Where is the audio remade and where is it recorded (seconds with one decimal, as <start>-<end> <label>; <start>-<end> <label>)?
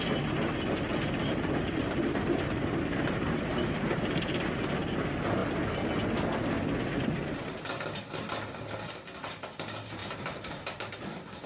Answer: 0.0-1.2 recorded; 1.2-4.4 remade; 4.4-10.0 recorded; 10.0-11.0 remade; 11.0-11.5 recorded